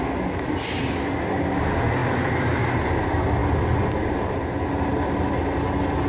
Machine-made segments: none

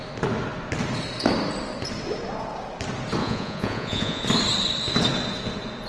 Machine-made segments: 3.2-4.2

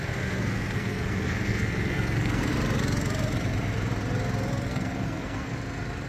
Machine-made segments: 0.0-2.5; 4.6-5.5

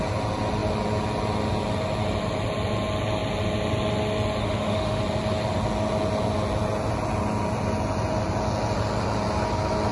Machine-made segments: 4.4-5.0

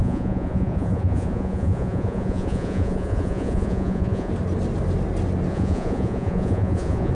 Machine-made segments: 0.0-4.3; 5.5-7.1

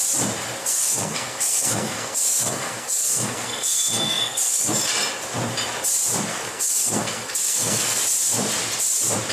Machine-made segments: 0.6-4.7; 6.3-8.0

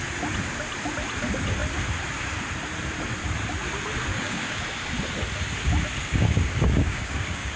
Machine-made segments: 4.1-4.6; 6.0-7.6

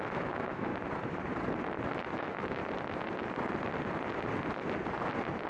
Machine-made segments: 0.0-0.7; 2.2-2.6